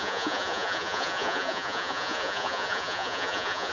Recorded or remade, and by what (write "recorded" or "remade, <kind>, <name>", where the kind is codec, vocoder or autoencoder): remade, vocoder, Vocos